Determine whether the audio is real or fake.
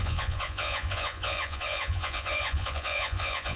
fake